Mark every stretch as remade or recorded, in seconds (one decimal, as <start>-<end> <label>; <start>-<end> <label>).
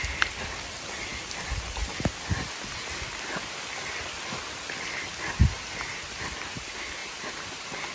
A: 0.0-7.0 recorded; 7.0-7.5 remade; 7.5-7.9 recorded